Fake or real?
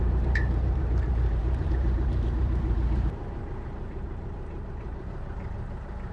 fake